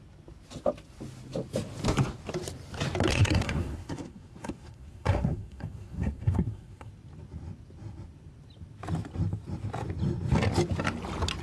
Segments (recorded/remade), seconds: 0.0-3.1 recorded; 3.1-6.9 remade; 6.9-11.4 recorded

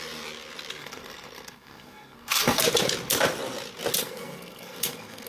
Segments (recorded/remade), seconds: 0.0-0.8 recorded; 0.8-2.6 remade; 2.6-4.0 recorded; 4.0-5.3 remade

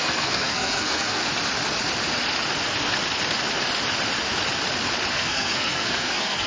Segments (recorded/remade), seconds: 0.0-1.2 remade; 1.2-5.1 recorded; 5.1-6.5 remade

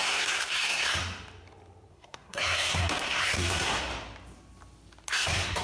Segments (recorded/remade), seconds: 0.0-1.0 remade; 1.0-1.9 recorded; 1.9-3.9 remade; 3.9-5.1 recorded; 5.1-5.6 remade

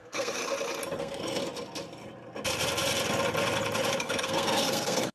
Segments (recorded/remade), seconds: 0.0-0.4 remade; 0.4-1.0 recorded; 1.0-1.4 remade; 1.4-4.0 recorded; 4.0-5.1 remade